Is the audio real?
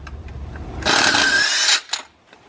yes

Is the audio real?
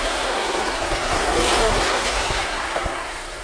no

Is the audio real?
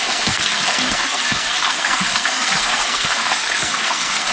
no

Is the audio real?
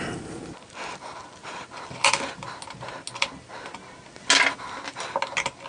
yes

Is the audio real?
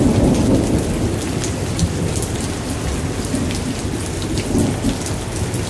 yes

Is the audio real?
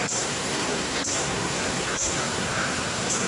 no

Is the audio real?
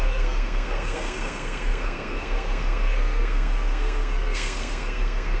no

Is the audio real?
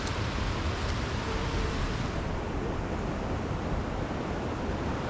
yes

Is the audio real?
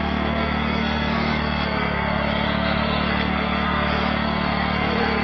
no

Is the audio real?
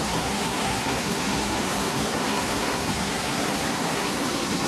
no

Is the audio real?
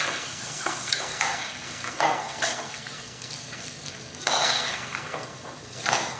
no